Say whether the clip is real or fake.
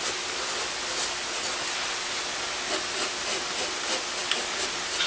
real